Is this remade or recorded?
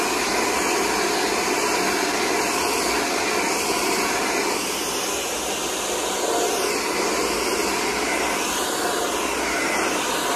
recorded